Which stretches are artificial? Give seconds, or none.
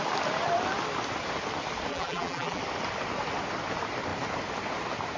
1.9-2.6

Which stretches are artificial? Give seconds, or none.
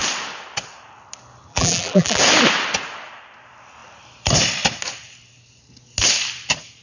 1.5-2.2